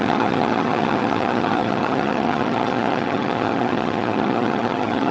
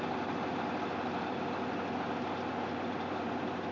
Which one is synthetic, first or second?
first